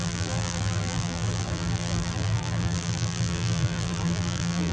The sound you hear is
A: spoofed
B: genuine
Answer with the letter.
A